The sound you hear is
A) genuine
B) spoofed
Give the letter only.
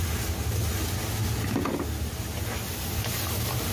A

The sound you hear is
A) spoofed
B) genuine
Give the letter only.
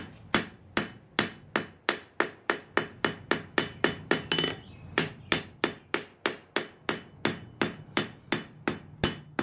B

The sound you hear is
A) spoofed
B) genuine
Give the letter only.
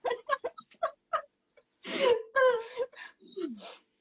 B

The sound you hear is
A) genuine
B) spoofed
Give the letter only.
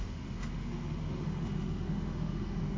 B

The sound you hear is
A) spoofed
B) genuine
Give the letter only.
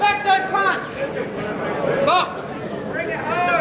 B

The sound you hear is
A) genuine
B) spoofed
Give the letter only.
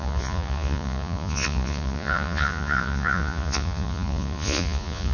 B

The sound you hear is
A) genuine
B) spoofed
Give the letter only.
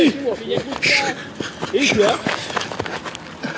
A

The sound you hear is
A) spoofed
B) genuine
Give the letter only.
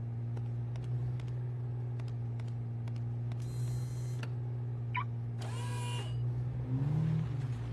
B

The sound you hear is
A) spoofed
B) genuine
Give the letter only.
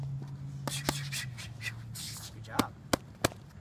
B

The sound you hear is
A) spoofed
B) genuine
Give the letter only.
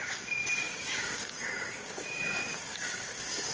A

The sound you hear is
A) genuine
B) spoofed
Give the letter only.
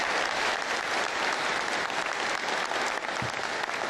A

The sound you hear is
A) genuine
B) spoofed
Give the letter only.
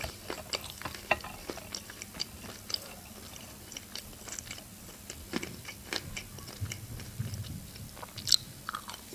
B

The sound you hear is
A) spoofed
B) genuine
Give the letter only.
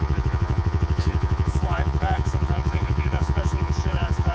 A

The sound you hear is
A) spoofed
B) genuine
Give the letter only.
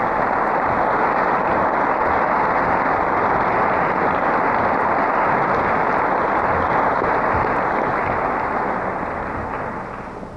B